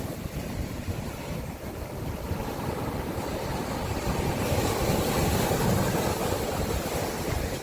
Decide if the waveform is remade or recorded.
recorded